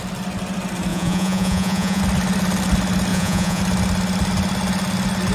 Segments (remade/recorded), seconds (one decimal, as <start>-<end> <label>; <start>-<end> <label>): 0.0-0.9 recorded; 0.9-2.0 remade; 2.0-3.1 recorded; 3.1-3.6 remade; 3.6-5.3 recorded